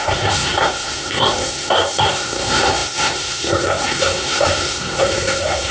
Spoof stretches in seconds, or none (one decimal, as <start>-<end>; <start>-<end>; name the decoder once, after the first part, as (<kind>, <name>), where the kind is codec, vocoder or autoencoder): 0.0-5.7 (codec, SNAC)